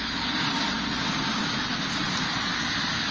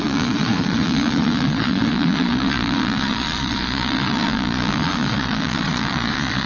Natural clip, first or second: first